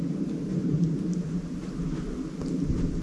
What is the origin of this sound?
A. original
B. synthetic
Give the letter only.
A